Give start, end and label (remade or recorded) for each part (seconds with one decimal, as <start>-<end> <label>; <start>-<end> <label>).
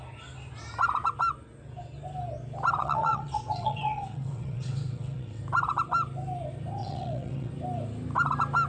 0.0-2.8 recorded; 2.8-5.4 remade; 5.4-6.8 recorded; 6.8-7.5 remade; 7.5-8.7 recorded